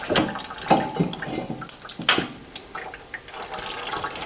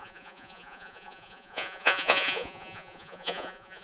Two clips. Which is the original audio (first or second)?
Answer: first